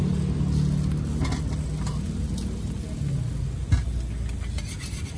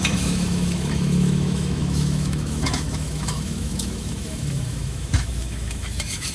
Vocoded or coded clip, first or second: second